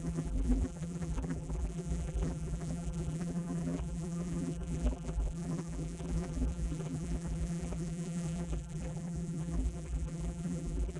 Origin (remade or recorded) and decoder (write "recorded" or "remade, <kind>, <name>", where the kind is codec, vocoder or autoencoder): remade, vocoder, BigVGAN v2